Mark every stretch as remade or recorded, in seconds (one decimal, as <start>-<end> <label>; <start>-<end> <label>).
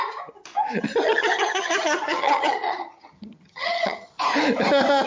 0.0-1.0 recorded; 1.0-4.1 remade; 4.1-5.1 recorded